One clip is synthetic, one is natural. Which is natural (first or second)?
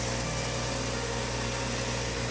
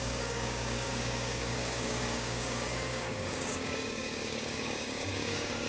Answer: first